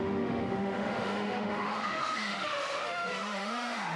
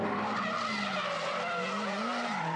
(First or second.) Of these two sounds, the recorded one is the second